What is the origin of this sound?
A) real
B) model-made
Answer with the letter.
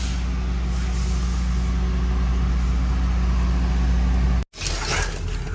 A